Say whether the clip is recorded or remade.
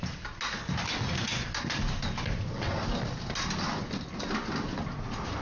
recorded